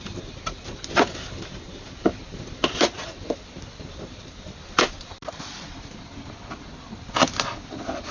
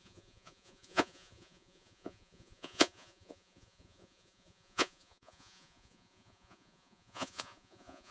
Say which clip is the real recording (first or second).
first